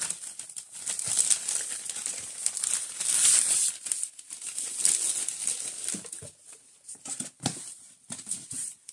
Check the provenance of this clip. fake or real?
real